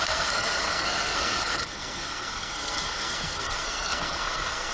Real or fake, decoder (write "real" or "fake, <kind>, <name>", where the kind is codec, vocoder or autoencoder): fake, codec, SNAC